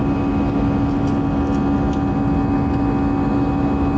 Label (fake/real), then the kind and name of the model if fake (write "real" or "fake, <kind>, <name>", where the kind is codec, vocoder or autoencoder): real